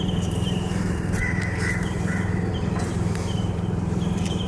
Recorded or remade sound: remade